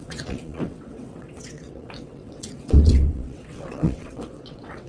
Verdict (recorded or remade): remade